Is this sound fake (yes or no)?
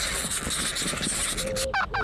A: no